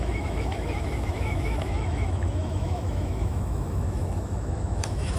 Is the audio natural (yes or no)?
no